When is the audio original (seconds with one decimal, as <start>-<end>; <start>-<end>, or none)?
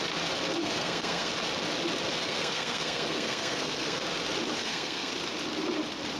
0.0-0.6; 1.3-2.2; 4.0-4.6; 5.1-6.2